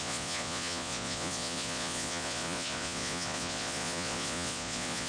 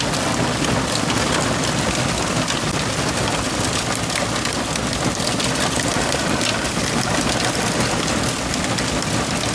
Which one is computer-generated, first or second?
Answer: first